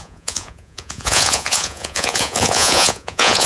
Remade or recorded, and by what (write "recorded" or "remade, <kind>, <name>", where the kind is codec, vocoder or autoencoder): remade, vocoder, Vocos